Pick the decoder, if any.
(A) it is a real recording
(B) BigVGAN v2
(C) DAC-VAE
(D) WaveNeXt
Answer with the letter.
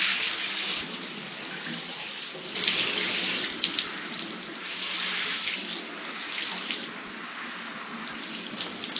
A